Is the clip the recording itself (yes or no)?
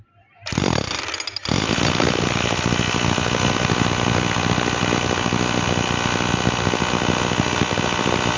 yes